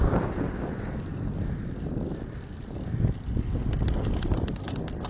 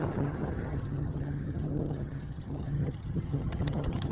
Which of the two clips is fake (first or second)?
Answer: second